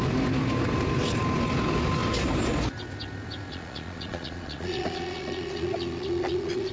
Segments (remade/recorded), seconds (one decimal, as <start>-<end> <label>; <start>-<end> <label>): 0.0-3.5 recorded; 3.5-6.7 remade